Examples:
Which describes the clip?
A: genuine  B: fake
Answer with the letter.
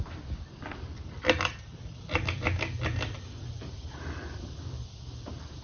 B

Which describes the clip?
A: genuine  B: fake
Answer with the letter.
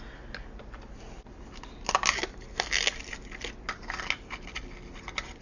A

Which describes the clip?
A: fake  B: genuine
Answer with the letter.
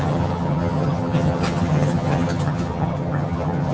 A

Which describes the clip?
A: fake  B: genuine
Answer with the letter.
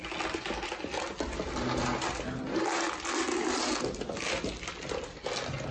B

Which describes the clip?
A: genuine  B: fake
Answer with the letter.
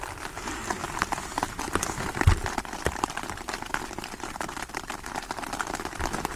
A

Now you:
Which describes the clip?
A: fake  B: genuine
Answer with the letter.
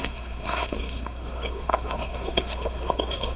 A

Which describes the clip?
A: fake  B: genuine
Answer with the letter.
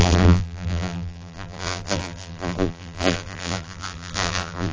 A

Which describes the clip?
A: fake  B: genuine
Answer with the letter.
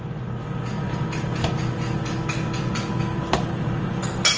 B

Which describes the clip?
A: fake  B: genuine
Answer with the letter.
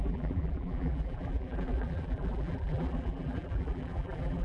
A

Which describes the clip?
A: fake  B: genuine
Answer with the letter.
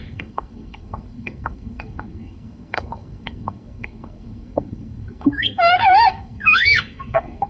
A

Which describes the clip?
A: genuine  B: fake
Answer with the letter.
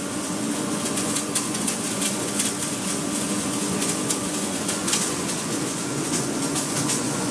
B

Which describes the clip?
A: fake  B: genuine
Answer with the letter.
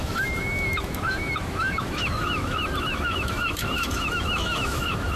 A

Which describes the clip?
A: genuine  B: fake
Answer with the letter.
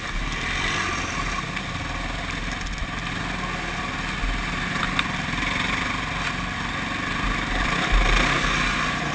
A